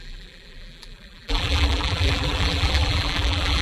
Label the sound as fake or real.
fake